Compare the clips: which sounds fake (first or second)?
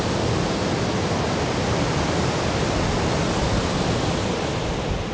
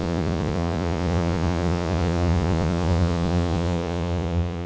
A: second